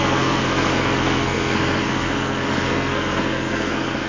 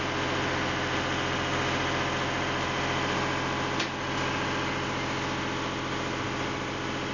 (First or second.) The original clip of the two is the second